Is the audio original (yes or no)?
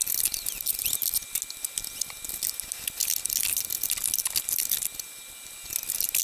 yes